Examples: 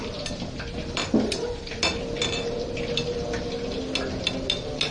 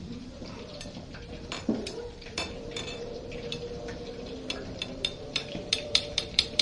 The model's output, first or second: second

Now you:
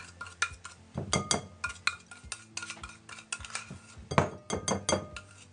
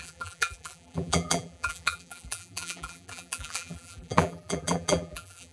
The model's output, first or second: second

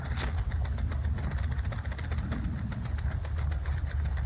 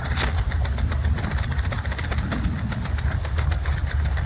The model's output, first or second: second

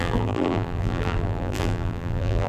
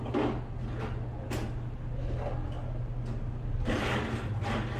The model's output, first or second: first